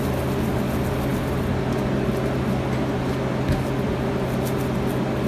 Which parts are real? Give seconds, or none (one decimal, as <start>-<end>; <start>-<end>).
0.0-5.3